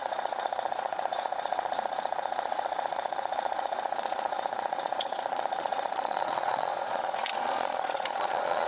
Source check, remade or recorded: remade